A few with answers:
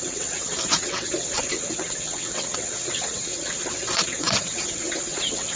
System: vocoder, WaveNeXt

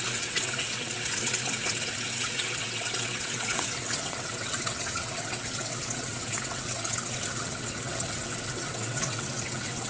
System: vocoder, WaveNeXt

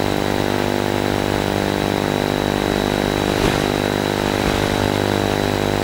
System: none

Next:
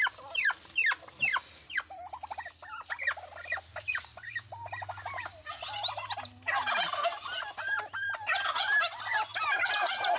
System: none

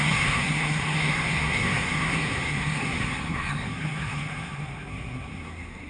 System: codec, SNAC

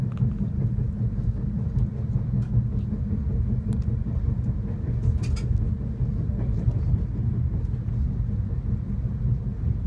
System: none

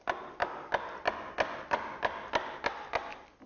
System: none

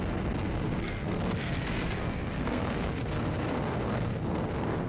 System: codec, SNAC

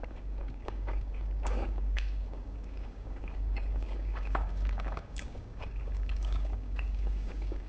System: codec, DAC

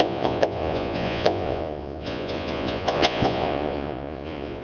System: vocoder, Vocos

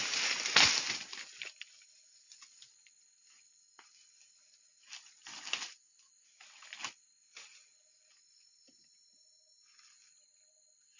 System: none